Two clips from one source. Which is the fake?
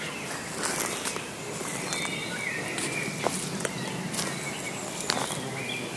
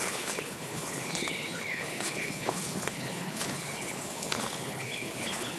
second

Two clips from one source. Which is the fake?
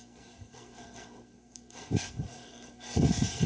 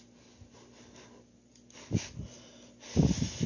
first